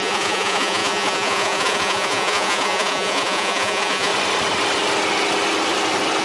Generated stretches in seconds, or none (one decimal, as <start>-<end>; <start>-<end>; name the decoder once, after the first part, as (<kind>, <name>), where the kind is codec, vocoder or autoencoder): 0.0-4.1 (vocoder, Vocos)